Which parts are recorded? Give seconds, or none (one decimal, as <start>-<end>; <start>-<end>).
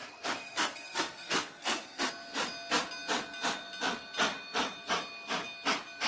2.1-6.1